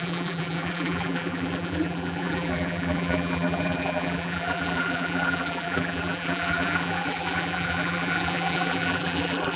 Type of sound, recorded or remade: remade